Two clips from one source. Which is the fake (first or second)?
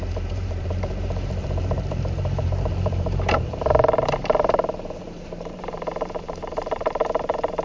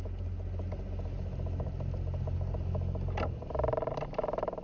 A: first